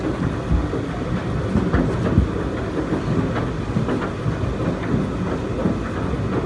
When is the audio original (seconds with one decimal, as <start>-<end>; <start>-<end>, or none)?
0.0-6.5